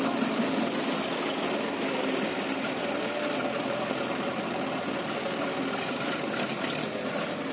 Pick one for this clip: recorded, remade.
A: recorded